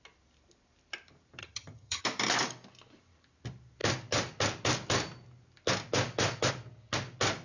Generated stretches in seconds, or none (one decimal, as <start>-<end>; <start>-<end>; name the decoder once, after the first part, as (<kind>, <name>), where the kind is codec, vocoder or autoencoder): 1.4-2.0 (vocoder, HiFi-GAN)